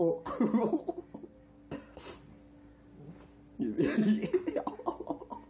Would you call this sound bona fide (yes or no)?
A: yes